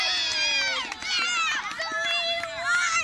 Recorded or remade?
recorded